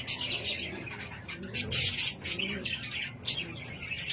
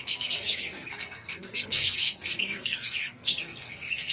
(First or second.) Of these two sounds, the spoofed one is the second